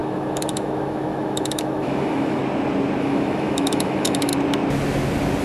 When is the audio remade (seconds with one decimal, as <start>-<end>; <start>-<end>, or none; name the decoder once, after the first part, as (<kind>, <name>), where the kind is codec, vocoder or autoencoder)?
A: 0.0-2.4 (autoencoder, DAC-VAE); 3.0-4.3